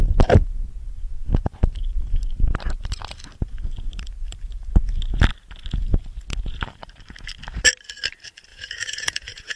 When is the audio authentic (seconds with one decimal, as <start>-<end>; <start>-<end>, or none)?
0.0-8.5